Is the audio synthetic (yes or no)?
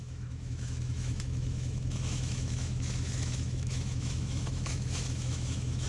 yes